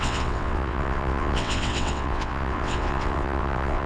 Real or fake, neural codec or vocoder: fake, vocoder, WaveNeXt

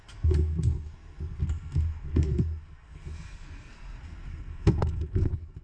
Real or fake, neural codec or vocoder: fake, codec, SNAC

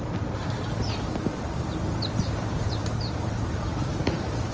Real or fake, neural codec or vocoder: fake, vocoder, BigVGAN v2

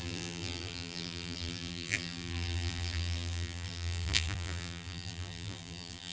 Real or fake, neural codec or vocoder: fake, vocoder, BigVGAN v2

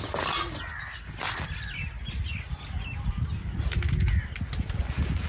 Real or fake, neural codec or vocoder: real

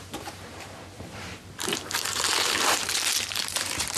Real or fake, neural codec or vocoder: fake, vocoder, BigVGAN v2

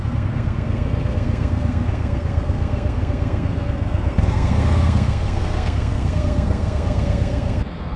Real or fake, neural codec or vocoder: fake, codec, SNAC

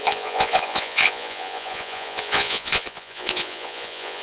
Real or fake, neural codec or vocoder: fake, vocoder, Vocos